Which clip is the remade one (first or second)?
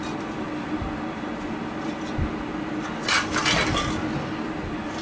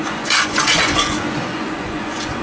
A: second